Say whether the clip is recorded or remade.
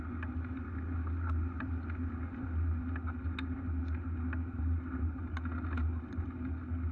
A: recorded